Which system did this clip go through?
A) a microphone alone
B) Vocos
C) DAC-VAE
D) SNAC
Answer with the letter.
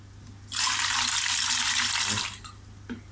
A